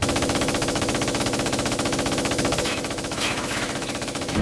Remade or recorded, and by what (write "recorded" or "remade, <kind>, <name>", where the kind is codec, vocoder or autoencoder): remade, autoencoder, DAC-VAE